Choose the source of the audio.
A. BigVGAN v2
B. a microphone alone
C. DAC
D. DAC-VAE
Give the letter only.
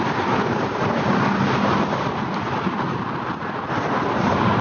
B